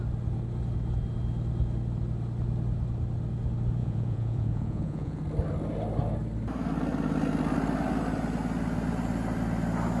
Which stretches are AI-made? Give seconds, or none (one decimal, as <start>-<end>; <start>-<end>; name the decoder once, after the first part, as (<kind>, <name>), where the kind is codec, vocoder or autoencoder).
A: 3.8-5.2 (vocoder, Vocos)